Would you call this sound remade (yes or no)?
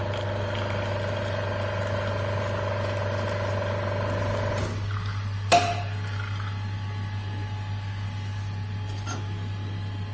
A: no